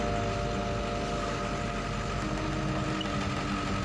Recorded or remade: recorded